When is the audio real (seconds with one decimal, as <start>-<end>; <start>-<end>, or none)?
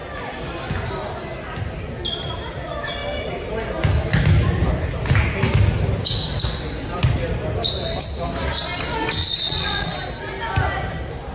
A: 0.0-9.2; 9.9-11.3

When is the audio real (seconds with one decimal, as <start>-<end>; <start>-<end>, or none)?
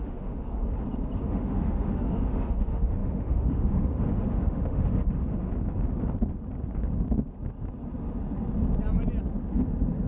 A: 0.6-1.2; 5.5-10.1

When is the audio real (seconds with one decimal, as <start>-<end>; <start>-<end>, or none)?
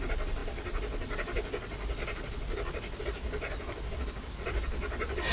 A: 0.0-5.3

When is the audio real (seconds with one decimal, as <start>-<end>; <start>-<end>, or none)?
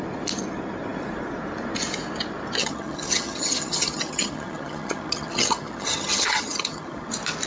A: 0.0-2.6; 7.1-7.5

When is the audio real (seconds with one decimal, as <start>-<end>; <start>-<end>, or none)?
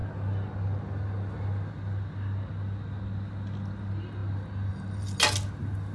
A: 0.0-5.9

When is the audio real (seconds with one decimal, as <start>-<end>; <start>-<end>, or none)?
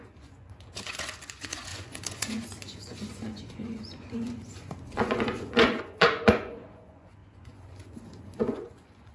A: none